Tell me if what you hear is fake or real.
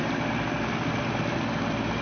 real